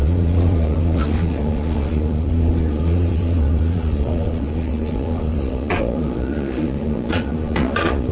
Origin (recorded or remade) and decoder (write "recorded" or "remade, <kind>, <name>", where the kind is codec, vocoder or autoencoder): remade, vocoder, Vocos